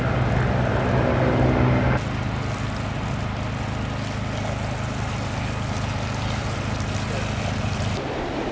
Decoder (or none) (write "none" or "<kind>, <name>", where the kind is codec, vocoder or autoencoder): none